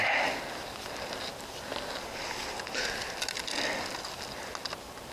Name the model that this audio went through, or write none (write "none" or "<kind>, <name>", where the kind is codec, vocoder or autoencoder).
none